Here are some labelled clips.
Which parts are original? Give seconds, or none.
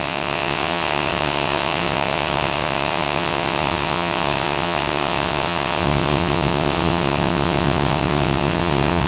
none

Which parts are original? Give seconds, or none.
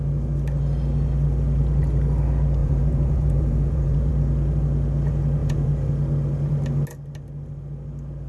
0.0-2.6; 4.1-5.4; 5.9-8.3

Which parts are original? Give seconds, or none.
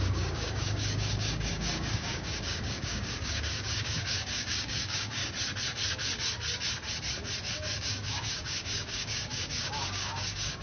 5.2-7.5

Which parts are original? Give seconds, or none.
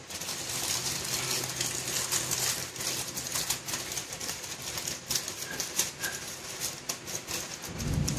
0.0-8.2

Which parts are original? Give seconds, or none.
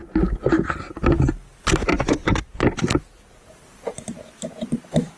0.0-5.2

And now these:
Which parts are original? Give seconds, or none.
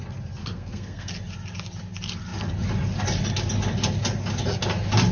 0.0-0.4; 1.1-5.1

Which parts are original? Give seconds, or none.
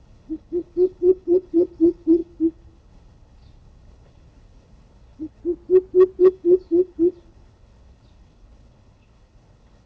5.4-6.2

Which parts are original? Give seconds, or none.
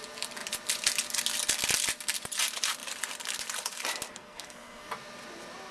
0.0-4.1; 4.9-5.7